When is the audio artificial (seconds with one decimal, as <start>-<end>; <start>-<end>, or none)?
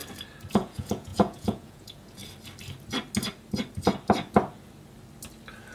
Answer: 0.5-2.2